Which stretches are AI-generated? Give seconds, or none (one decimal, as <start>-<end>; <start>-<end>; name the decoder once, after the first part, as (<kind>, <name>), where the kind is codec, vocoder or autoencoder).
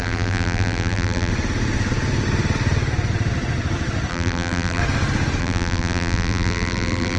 0.0-1.3 (vocoder, BigVGAN v2); 4.1-4.8; 5.4-7.2